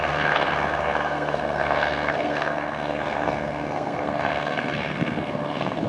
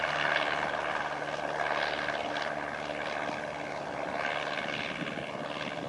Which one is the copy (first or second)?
first